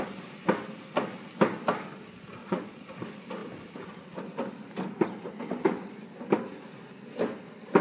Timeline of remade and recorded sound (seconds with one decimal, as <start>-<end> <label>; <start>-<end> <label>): 0.0-2.4 recorded; 2.4-2.9 remade; 2.9-7.8 recorded